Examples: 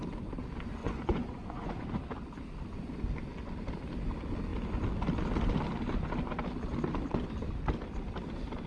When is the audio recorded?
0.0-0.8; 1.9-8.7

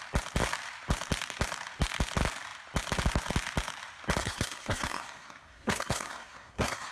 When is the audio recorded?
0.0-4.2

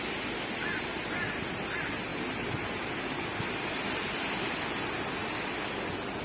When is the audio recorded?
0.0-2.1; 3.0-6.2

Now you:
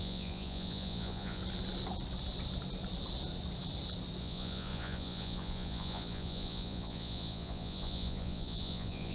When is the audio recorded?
1.4-4.2